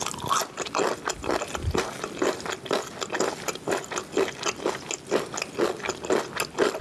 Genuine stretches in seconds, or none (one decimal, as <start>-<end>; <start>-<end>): 0.0-6.8